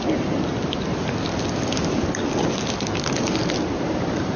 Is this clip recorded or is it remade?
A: recorded